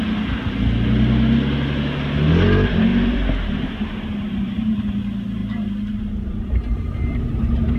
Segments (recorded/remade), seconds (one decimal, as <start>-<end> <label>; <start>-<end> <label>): 0.0-2.9 recorded; 2.9-4.8 remade; 4.8-5.4 recorded; 5.4-7.8 remade